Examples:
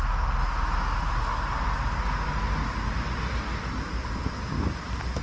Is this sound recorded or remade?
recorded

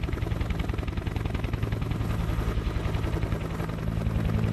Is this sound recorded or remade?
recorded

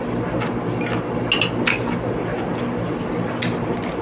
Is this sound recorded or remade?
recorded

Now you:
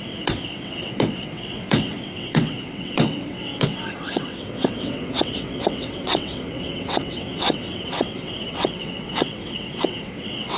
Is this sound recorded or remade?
remade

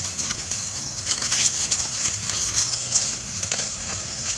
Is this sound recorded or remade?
remade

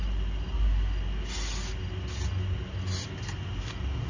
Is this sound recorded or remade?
recorded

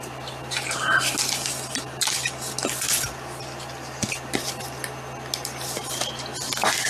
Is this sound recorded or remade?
recorded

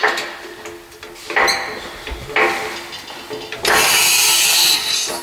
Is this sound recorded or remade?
recorded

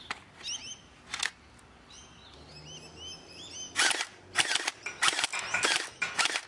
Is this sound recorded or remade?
recorded